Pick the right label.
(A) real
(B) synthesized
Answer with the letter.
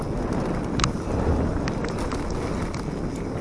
A